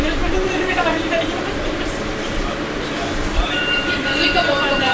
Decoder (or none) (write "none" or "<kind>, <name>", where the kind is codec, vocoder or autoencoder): vocoder, BigVGAN v2